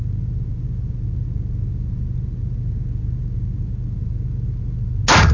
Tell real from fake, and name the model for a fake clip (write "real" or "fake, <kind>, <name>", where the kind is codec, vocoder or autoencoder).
real